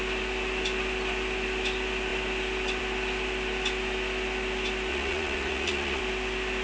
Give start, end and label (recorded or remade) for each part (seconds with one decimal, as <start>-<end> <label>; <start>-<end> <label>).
0.0-4.9 recorded; 4.9-6.0 remade; 6.0-6.6 recorded